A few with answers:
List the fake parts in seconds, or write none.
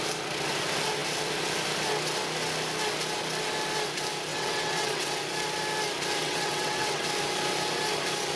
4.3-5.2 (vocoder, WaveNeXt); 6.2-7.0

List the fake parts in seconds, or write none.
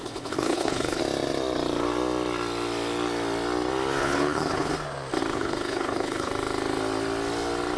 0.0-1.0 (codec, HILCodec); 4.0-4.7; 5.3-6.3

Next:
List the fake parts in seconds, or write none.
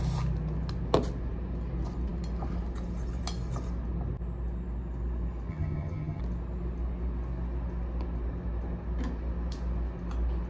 5.5-6.2 (vocoder, HiFi-GAN)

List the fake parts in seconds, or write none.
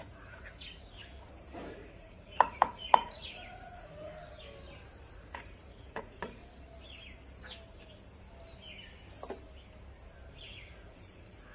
0.0-1.0 (vocoder, Vocos); 1.7-4.1; 5.1-6.4; 10.4-11.5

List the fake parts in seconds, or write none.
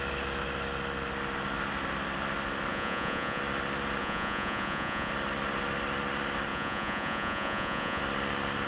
2.7-3.4 (vocoder, Vocos); 4.0-5.1; 6.5-8.0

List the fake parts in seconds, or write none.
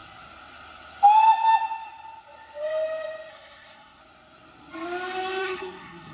3.3-4.0 (codec, SNAC); 5.4-6.1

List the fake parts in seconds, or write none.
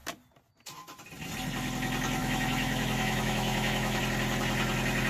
2.2-4.0 (autoencoder, DAC-VAE)